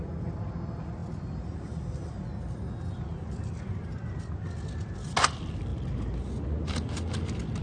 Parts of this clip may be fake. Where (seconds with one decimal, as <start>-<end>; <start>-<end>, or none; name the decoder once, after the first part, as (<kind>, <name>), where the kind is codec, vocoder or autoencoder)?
none